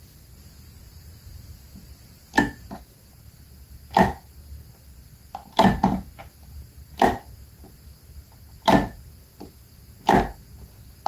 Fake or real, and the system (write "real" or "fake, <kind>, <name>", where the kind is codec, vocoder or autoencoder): real